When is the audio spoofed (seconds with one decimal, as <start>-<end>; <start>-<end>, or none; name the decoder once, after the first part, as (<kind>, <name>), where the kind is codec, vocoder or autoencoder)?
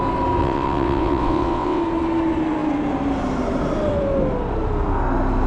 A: 0.4-1.8 (vocoder, WaveNeXt)